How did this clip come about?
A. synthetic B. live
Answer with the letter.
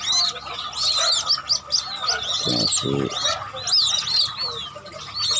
B